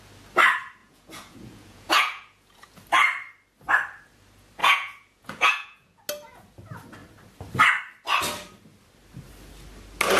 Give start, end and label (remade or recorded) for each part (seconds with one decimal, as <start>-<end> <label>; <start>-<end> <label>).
0.0-0.8 recorded; 0.8-2.8 remade; 2.8-4.6 recorded; 4.6-6.0 remade; 6.0-10.2 recorded